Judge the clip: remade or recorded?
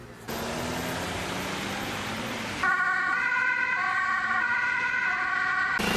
recorded